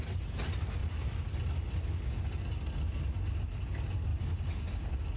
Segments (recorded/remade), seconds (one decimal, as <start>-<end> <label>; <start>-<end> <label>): 0.0-5.2 recorded

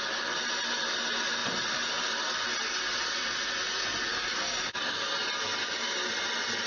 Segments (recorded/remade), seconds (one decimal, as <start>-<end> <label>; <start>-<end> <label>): 0.0-4.1 recorded; 4.1-5.1 remade; 5.1-5.6 recorded; 5.6-6.1 remade; 6.1-6.7 recorded

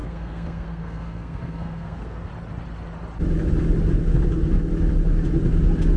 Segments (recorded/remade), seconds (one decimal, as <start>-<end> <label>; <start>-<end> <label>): 0.0-2.3 remade; 2.3-6.0 recorded

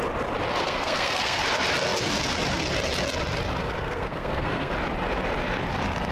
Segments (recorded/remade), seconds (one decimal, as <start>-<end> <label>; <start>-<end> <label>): 0.0-0.6 recorded; 0.6-1.4 remade; 1.4-3.6 recorded; 3.6-4.7 remade; 4.7-6.1 recorded

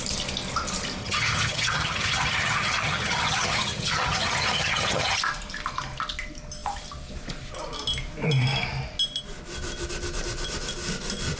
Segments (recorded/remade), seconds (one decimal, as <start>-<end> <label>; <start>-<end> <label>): 0.0-1.0 recorded; 1.0-5.2 remade; 5.2-11.4 recorded

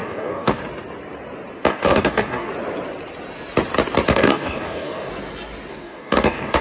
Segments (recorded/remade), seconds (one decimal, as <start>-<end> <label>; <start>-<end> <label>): 0.0-0.6 remade; 0.6-1.7 recorded; 1.7-2.5 remade; 2.5-4.1 recorded; 4.1-5.1 remade; 5.1-5.7 recorded; 5.7-6.6 remade

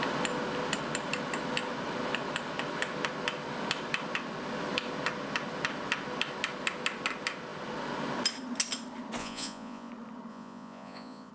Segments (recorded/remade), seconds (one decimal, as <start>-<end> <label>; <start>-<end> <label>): 0.0-9.2 recorded; 9.2-9.9 remade; 9.9-10.3 recorded; 10.3-11.3 remade